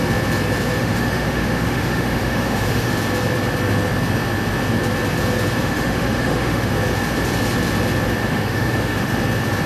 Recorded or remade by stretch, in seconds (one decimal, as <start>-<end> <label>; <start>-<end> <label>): 0.0-0.8 recorded; 0.8-2.9 remade; 2.9-5.6 recorded; 5.6-6.7 remade; 6.7-8.2 recorded; 8.2-9.1 remade; 9.1-9.7 recorded